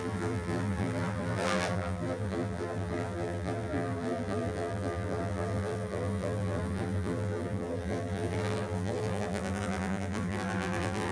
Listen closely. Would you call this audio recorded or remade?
remade